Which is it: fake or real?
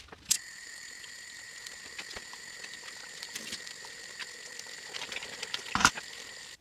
fake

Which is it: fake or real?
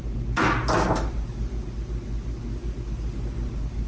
real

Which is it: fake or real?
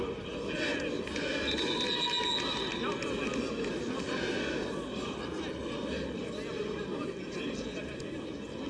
real